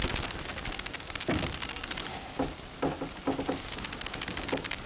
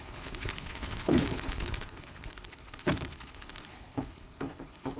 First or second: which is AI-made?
second